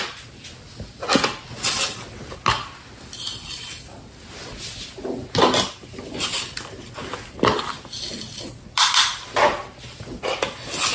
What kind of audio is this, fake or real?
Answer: real